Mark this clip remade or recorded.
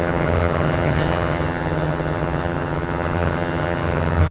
remade